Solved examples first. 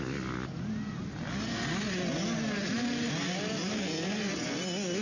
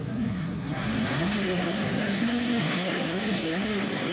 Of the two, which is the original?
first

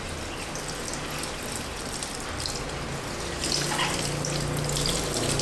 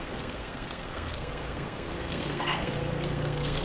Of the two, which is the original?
first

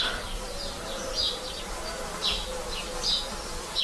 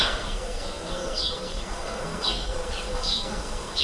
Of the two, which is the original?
first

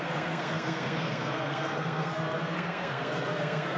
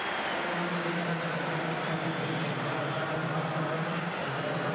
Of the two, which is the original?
second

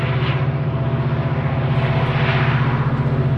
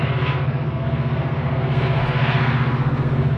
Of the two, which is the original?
first